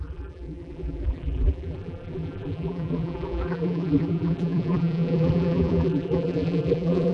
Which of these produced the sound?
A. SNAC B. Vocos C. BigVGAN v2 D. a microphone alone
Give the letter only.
C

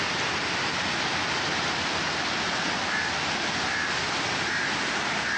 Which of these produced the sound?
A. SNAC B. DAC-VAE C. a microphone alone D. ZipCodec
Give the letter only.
C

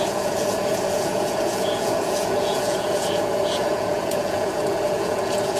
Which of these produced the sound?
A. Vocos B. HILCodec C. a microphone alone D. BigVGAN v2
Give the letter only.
A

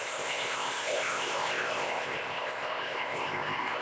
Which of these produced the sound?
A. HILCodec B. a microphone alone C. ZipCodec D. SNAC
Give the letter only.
C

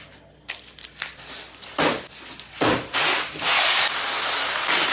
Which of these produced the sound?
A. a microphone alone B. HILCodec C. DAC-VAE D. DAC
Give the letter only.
A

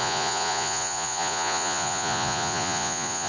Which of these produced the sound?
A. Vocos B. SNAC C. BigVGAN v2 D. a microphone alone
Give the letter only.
A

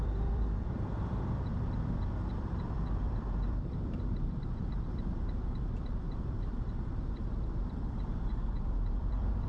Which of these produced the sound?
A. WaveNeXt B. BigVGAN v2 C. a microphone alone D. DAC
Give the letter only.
B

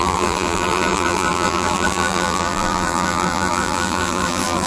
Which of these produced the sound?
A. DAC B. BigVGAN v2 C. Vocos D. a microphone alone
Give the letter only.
B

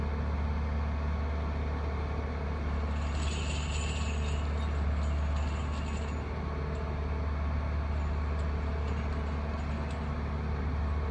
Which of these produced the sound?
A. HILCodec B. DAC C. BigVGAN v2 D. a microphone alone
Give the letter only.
D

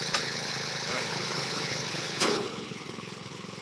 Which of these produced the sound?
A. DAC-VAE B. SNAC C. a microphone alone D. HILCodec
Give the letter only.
D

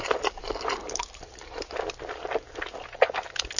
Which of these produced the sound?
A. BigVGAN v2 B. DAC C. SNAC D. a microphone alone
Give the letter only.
D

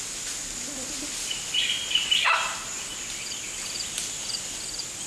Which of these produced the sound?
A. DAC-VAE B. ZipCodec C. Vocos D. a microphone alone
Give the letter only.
D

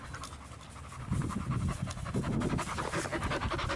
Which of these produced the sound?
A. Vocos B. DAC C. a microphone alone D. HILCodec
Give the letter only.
C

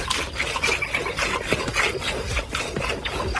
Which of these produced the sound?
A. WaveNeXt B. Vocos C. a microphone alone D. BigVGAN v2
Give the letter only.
C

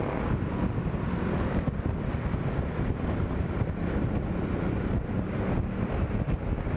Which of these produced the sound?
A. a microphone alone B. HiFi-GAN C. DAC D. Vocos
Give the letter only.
A